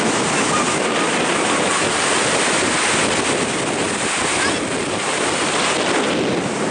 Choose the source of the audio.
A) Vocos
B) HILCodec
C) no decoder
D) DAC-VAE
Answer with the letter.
C